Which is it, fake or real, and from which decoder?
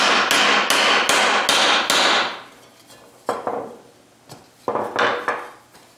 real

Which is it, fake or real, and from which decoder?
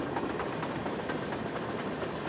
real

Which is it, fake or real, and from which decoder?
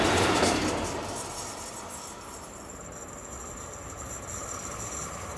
real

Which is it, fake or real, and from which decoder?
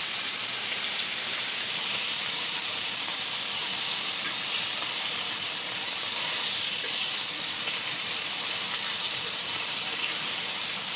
fake, vocoder, BigVGAN v2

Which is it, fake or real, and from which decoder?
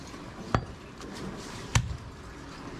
real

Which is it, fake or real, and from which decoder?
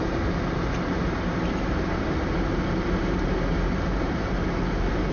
fake, vocoder, BigVGAN v2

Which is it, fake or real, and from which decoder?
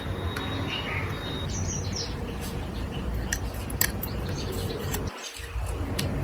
real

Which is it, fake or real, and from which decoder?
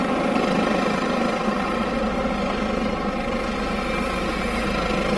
real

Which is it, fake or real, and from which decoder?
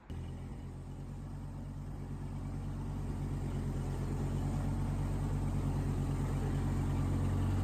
real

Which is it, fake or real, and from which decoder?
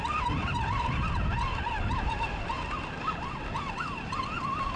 real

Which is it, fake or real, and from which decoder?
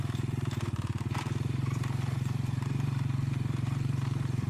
fake, vocoder, BigVGAN v2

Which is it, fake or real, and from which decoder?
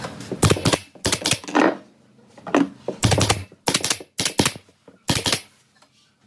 real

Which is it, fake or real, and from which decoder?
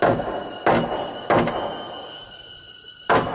real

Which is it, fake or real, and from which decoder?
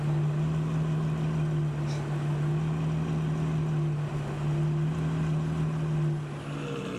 real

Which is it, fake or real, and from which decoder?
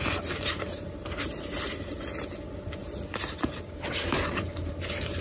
fake, vocoder, BigVGAN v2